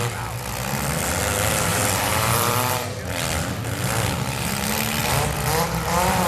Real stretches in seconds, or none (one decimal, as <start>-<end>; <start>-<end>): 0.0-1.7; 4.5-5.0